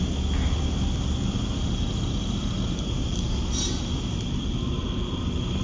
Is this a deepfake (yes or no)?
no